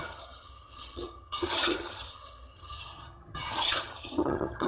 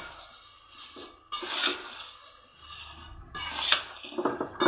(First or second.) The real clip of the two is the second